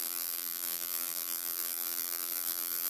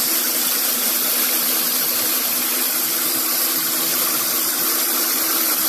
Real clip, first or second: second